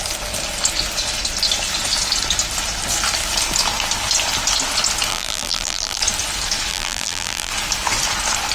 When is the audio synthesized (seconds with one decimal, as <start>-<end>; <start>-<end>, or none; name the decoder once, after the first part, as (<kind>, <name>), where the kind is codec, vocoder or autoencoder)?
5.1-6.0 (vocoder, BigVGAN v2); 6.7-7.5